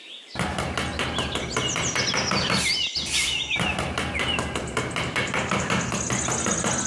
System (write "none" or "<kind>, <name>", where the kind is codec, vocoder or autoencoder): none